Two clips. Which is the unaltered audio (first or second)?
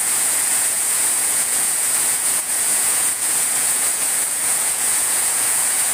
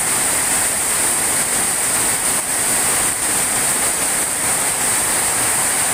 second